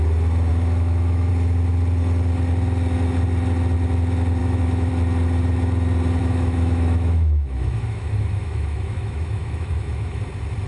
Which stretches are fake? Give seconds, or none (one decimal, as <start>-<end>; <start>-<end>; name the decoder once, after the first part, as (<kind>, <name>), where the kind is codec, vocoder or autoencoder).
0.5-1.3 (autoencoder, DAC-VAE); 4.4-4.9; 6.2-10.2